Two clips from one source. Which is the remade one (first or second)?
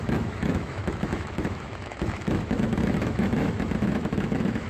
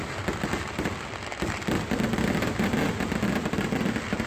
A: first